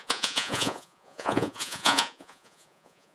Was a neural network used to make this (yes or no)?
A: yes